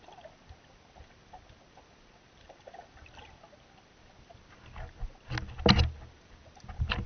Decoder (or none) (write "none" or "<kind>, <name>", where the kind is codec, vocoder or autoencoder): none